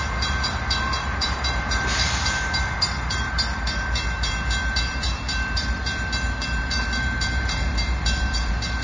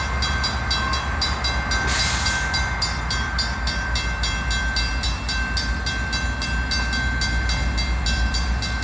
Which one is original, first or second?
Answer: second